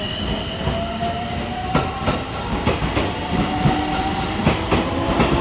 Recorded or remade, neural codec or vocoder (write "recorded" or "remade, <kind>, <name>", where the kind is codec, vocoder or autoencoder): recorded